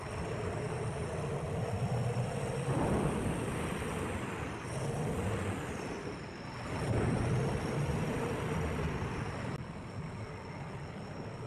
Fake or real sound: real